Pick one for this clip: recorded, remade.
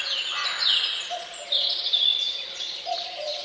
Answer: remade